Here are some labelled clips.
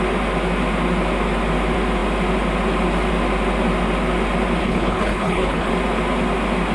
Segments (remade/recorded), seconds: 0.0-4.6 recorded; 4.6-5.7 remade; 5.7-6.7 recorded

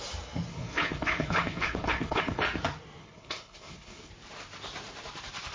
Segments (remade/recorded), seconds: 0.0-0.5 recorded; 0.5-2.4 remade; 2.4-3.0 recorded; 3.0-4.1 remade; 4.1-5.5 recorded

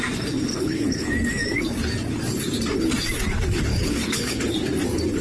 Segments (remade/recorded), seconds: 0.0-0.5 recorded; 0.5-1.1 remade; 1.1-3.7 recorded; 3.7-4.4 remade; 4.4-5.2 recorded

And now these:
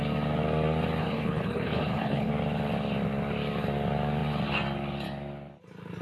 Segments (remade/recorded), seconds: 0.0-1.0 recorded; 1.0-2.3 remade; 2.3-6.0 recorded

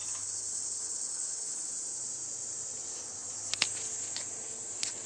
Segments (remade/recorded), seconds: 0.0-1.7 remade; 1.7-5.1 recorded